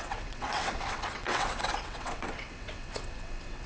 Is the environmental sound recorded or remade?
remade